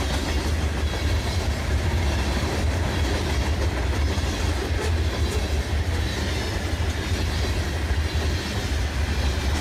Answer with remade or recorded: recorded